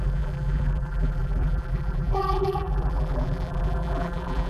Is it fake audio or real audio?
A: fake